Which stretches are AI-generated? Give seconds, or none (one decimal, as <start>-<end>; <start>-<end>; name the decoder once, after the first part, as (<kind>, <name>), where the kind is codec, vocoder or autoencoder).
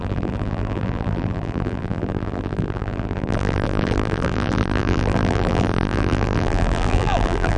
0.0-7.6 (vocoder, BigVGAN v2)